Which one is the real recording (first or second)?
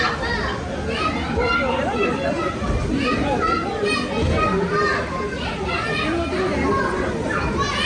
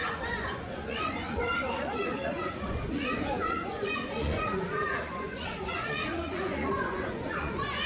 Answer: first